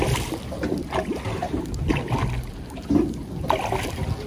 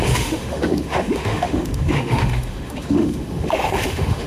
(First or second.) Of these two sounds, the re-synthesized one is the second